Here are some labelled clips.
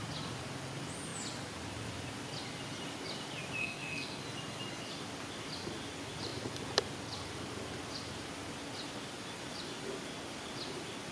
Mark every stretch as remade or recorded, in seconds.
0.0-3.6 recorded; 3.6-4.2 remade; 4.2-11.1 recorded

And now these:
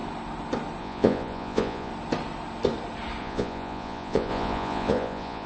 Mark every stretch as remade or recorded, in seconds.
0.0-0.8 recorded; 0.8-1.9 remade; 1.9-3.2 recorded; 3.2-5.5 remade

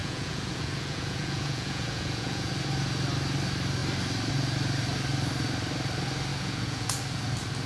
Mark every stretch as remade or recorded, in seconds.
0.0-2.5 remade; 2.5-6.3 recorded; 6.3-7.0 remade; 7.0-7.7 recorded

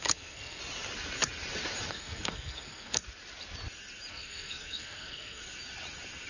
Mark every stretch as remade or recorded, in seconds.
0.0-0.6 remade; 0.6-1.9 recorded; 1.9-3.0 remade; 3.0-4.1 recorded; 4.1-5.4 remade; 5.4-6.3 recorded

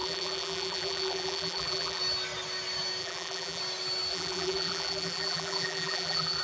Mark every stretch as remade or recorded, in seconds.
0.0-2.0 remade; 2.0-3.0 recorded; 3.0-3.6 remade; 3.6-4.1 recorded; 4.1-6.4 remade